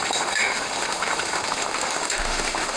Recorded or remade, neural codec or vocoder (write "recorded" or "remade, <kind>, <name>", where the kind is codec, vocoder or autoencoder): remade, autoencoder, DAC-VAE